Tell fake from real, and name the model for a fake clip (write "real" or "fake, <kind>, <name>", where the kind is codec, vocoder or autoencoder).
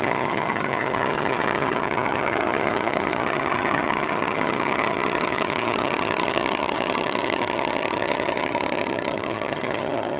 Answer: fake, vocoder, HiFi-GAN